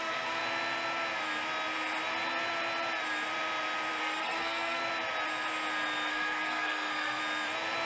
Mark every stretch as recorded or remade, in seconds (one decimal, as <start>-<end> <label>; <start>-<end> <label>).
0.0-0.4 remade; 0.4-4.0 recorded; 4.0-4.8 remade; 4.8-6.1 recorded; 6.1-7.2 remade; 7.2-7.9 recorded